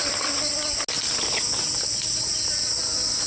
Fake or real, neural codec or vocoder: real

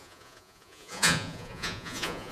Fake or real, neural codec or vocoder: fake, vocoder, Vocos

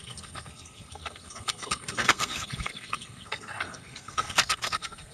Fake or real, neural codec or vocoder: fake, codec, SNAC